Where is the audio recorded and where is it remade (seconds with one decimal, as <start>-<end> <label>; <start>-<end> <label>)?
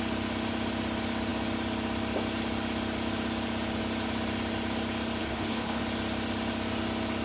0.0-5.2 recorded; 5.2-5.8 remade; 5.8-7.2 recorded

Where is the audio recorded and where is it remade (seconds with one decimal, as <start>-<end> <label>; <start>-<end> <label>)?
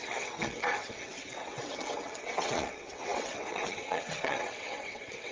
0.0-5.3 remade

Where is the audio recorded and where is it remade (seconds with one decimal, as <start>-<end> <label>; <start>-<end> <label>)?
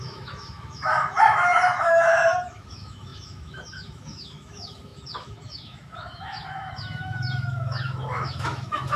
0.0-9.0 remade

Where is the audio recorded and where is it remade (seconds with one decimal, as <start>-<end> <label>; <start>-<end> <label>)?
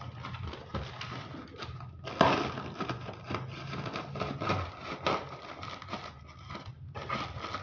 0.0-7.6 recorded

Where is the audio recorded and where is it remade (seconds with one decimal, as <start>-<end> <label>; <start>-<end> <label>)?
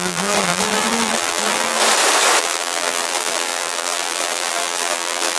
0.0-1.8 remade; 1.8-2.4 recorded; 2.4-5.4 remade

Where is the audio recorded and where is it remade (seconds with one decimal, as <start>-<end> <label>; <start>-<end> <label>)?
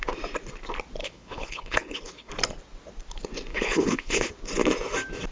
0.0-1.0 recorded; 1.0-2.3 remade; 2.3-3.5 recorded; 3.5-4.3 remade; 4.3-5.3 recorded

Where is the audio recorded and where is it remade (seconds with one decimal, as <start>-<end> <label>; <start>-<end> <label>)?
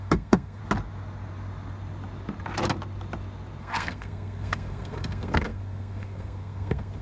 0.0-0.6 remade; 0.6-3.6 recorded; 3.6-7.0 remade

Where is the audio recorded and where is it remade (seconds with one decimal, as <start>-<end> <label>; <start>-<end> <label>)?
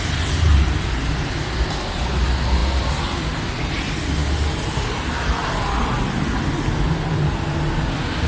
0.0-8.3 recorded